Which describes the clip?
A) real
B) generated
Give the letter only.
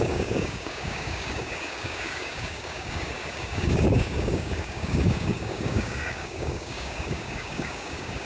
B